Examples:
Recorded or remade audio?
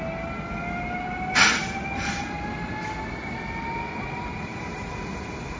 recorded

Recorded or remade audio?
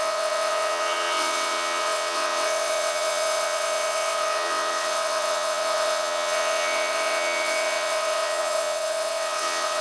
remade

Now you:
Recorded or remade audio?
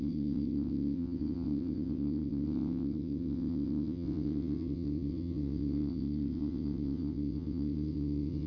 remade